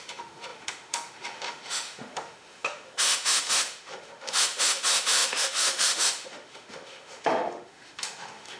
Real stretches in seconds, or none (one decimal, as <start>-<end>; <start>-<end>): none